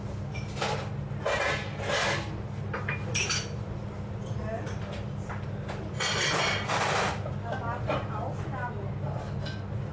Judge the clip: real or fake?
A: real